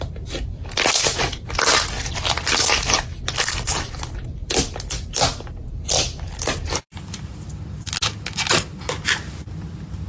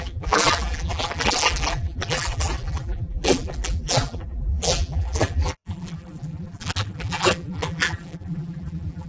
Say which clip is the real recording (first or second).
first